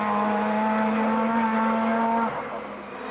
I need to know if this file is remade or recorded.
recorded